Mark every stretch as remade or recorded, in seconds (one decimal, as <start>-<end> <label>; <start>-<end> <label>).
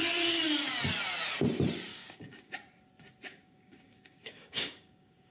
0.0-1.9 recorded; 1.9-2.5 remade; 2.5-3.3 recorded; 3.3-5.3 remade